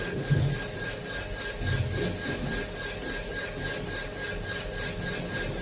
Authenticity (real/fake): real